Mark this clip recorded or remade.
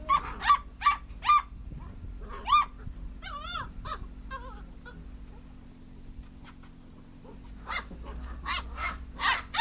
recorded